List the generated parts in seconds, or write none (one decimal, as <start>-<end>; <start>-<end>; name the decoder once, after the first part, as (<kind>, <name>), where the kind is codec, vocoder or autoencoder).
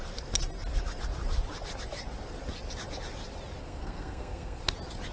3.6-4.6 (codec, SNAC)